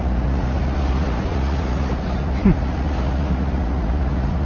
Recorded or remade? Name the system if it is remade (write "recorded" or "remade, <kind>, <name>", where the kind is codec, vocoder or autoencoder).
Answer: remade, vocoder, Vocos